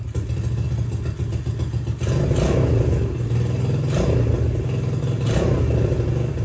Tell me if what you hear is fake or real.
real